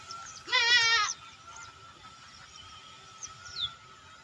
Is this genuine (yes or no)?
yes